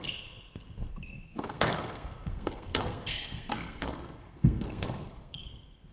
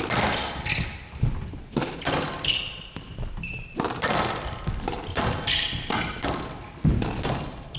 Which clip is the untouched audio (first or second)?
second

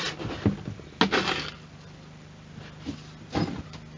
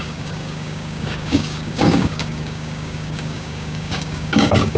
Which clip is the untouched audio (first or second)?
first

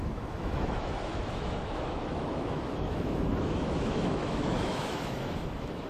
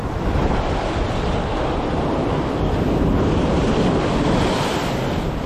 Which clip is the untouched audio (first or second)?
second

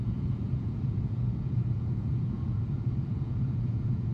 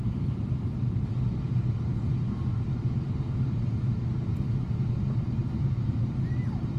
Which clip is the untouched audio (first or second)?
second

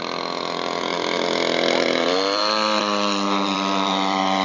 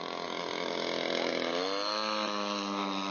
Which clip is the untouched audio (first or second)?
second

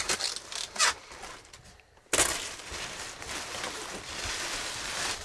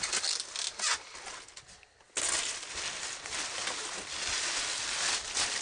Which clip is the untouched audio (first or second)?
second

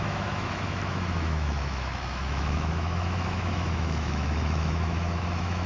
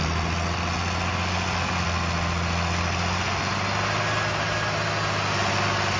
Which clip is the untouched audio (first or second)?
second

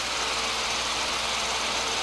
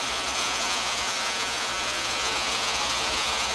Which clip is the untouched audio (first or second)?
first